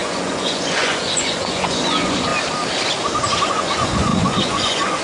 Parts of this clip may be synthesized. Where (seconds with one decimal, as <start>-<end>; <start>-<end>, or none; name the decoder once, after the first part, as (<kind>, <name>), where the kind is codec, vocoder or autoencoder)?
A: 0.0-2.3 (vocoder, Vocos); 3.5-5.0